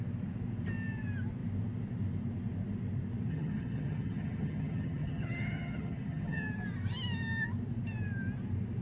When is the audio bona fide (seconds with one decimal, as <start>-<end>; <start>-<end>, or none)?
0.0-3.3; 6.5-8.8